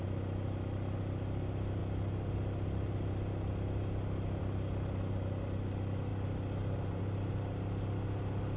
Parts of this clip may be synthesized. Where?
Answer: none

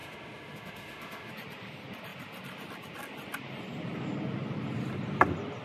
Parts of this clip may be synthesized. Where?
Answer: 0.0-1.3 (autoencoder, DAC-VAE)

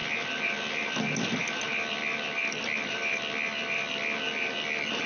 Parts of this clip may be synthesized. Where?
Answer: none

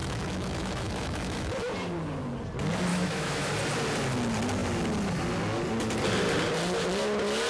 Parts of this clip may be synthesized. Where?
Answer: 0.0-1.5 (autoencoder, DAC-VAE); 2.9-3.5

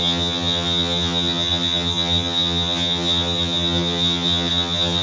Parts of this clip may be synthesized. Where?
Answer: 0.0-5.0 (vocoder, HiFi-GAN)

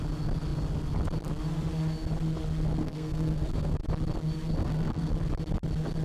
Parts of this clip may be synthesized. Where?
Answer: 2.8-3.8 (codec, SNAC); 4.6-5.1

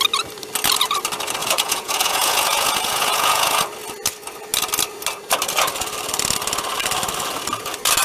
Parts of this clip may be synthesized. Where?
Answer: 1.4-3.6 (vocoder, Vocos)